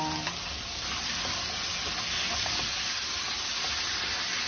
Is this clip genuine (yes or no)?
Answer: yes